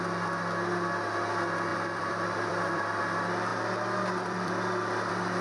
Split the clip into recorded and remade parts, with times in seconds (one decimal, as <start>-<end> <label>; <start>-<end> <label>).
0.0-1.7 recorded; 1.7-3.0 remade; 3.0-3.5 recorded; 3.5-5.4 remade